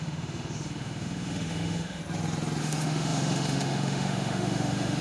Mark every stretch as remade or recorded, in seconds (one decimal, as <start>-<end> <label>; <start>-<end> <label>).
0.0-2.0 remade; 2.0-2.6 recorded; 2.6-5.0 remade